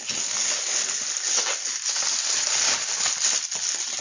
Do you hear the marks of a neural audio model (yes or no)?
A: no